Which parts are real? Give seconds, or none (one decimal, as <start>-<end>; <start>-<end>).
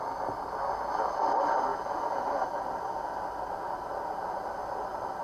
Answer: 0.0-5.2